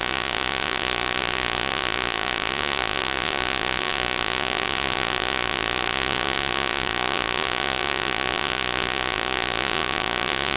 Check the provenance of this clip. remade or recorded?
remade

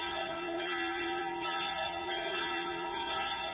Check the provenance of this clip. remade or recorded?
remade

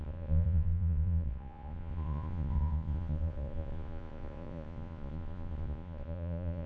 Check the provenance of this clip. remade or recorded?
remade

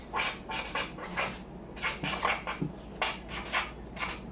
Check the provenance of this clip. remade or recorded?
recorded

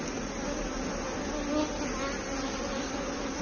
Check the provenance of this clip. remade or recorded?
recorded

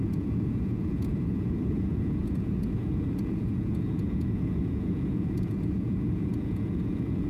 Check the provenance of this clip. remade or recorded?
remade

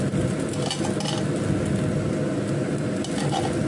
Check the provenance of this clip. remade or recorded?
recorded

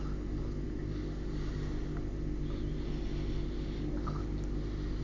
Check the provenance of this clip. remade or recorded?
recorded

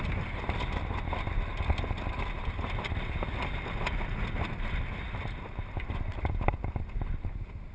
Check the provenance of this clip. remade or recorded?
recorded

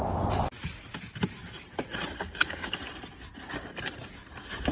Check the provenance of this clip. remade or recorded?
recorded